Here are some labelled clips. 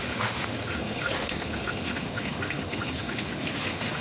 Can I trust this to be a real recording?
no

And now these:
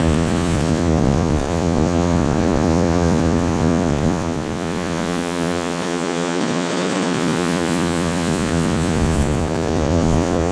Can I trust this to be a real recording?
no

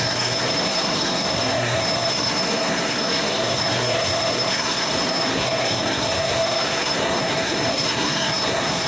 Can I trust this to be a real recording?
no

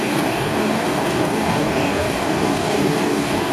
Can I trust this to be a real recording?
no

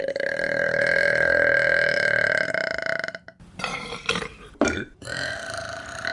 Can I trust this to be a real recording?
no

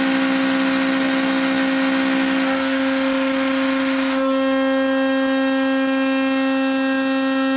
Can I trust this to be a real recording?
yes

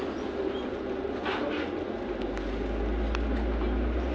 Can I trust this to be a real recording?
yes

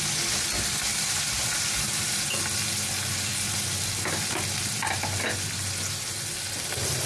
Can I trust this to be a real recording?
yes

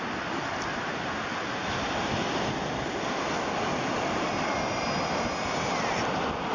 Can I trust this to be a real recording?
yes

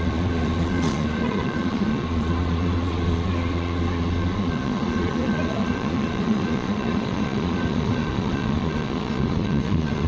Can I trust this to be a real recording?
no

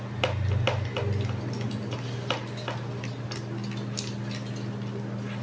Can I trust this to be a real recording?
yes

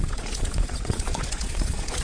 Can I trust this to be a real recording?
no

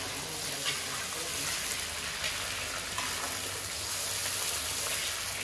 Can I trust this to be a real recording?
yes